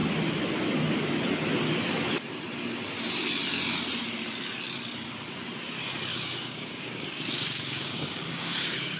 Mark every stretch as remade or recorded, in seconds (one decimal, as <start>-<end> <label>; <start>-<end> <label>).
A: 0.0-6.1 recorded; 6.1-9.0 remade